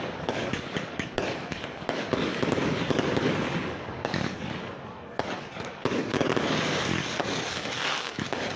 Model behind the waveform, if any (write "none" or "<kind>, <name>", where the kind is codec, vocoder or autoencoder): codec, DAC